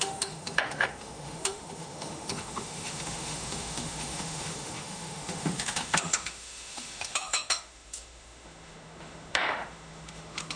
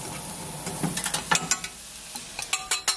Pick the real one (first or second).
second